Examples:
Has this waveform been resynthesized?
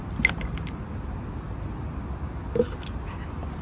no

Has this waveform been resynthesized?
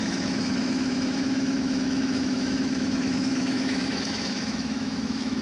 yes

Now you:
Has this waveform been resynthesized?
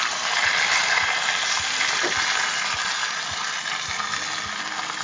no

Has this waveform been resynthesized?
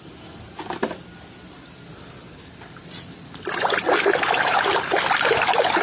no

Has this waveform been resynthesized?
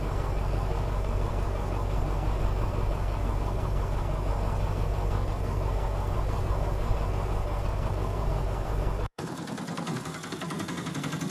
yes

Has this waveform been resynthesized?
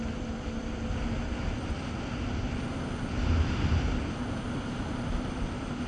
no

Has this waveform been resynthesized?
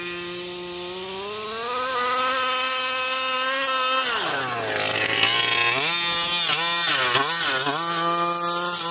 no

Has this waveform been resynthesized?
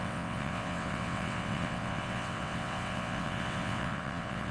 yes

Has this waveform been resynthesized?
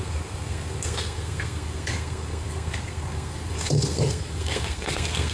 yes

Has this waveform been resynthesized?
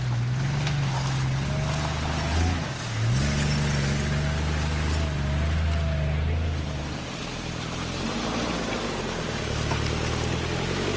no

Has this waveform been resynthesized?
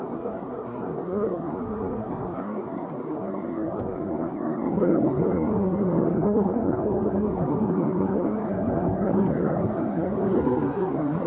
yes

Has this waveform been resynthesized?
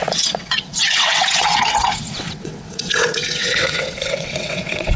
yes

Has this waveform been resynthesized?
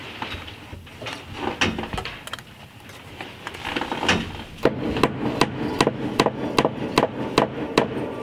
no